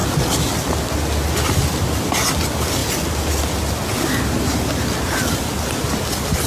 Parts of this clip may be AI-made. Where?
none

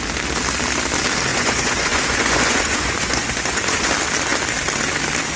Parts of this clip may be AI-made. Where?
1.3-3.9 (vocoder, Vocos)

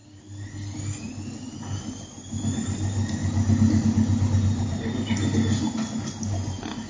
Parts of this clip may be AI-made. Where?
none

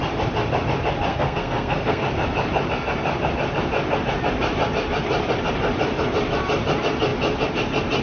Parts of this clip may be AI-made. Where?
1.1-2.0 (codec, SNAC)